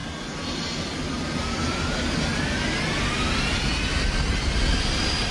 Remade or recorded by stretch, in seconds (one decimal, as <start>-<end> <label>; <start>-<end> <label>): 0.0-5.3 recorded